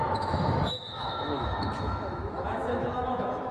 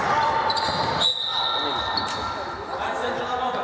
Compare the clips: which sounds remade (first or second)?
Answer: first